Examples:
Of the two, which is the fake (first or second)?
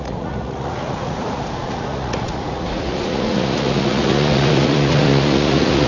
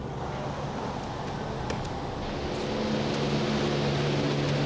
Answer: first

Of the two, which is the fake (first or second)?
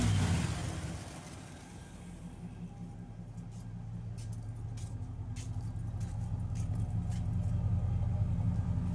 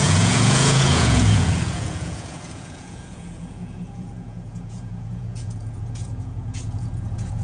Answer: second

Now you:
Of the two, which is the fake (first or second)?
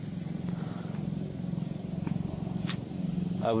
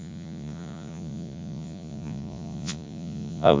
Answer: second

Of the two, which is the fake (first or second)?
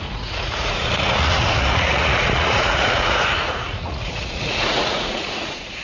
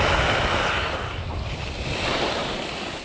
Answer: first